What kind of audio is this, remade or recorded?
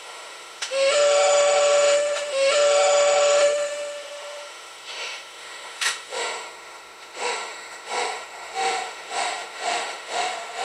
remade